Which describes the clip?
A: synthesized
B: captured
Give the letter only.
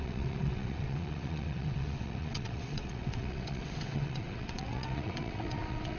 A